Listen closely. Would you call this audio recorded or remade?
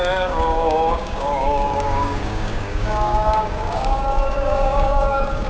remade